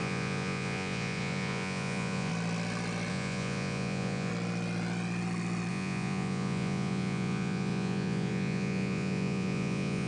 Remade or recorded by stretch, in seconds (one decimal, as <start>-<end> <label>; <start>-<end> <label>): 0.0-2.3 remade; 2.3-3.1 recorded; 3.1-4.3 remade; 4.3-5.7 recorded; 5.7-10.1 remade